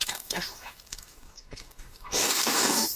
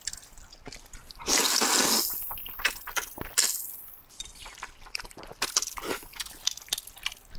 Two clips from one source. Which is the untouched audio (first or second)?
second